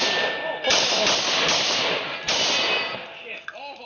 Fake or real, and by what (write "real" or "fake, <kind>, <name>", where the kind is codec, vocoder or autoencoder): real